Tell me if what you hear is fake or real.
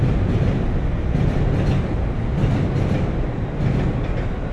real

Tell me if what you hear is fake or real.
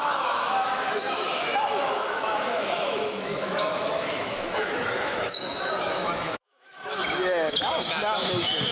fake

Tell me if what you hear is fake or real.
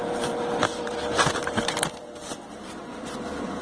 fake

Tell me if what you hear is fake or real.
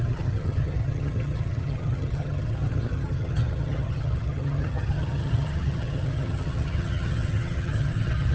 fake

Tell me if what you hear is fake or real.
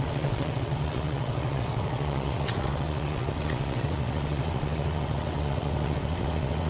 fake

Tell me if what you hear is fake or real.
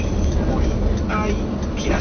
real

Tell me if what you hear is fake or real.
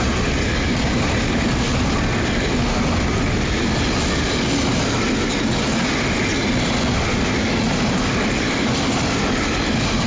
real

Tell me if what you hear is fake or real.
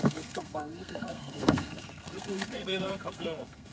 fake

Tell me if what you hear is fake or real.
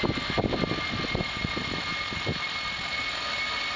real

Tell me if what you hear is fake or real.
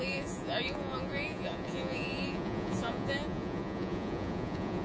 fake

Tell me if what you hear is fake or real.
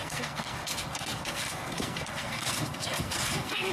fake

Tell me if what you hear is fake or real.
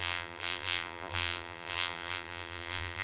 fake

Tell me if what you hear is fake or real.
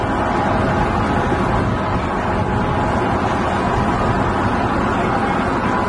real